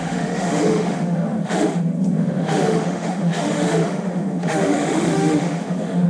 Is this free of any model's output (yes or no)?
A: no